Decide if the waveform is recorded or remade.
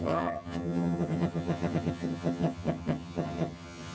remade